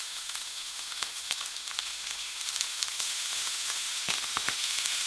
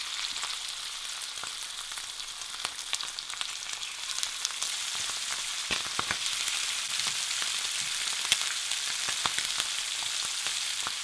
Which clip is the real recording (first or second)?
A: second